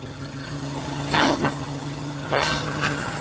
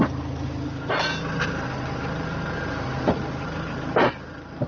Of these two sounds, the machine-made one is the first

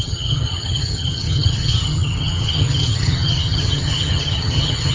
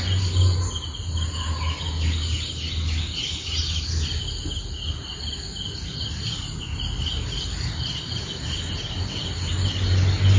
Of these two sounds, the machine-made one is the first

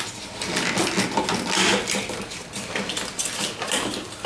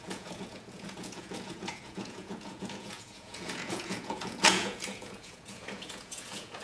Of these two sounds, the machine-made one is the second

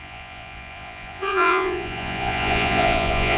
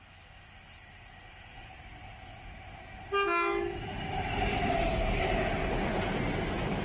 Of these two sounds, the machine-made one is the first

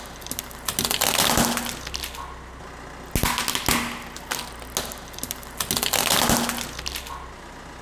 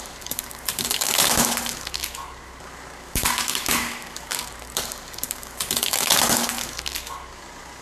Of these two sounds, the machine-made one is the second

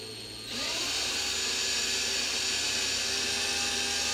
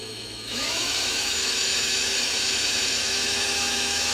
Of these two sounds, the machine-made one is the second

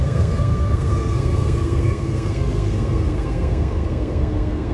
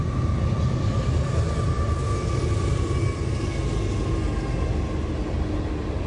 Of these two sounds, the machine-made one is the first